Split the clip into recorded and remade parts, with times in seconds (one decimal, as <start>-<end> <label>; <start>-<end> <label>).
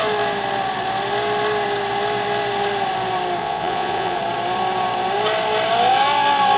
0.0-3.4 recorded; 3.4-4.2 remade; 4.2-6.6 recorded